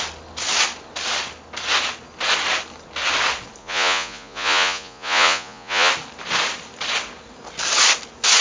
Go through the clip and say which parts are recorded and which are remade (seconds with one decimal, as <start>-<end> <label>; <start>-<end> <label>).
0.0-3.6 recorded; 3.6-5.9 remade; 5.9-8.4 recorded